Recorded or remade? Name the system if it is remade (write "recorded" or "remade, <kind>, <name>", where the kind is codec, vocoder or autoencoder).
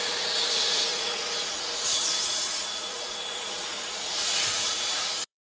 remade, vocoder, Vocos